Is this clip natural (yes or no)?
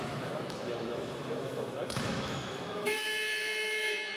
no